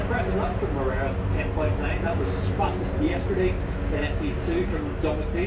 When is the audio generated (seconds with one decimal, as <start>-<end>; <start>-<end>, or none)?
1.7-3.2